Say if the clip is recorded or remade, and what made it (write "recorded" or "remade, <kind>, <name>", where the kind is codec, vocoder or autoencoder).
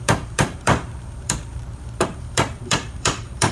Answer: remade, vocoder, BigVGAN v2